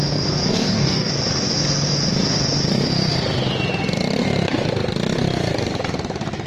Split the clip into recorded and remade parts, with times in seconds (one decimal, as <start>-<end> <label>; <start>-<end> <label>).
0.0-0.5 recorded; 0.5-1.1 remade; 1.1-6.5 recorded

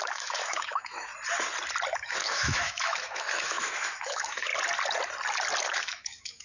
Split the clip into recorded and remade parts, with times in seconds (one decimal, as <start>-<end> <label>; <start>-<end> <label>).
0.0-1.1 remade; 1.1-1.9 recorded; 1.9-4.5 remade; 4.5-5.6 recorded; 5.6-6.4 remade

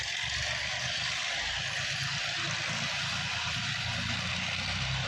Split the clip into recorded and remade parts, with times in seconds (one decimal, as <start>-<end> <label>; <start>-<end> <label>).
0.0-5.1 recorded